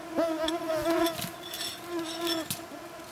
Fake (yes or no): no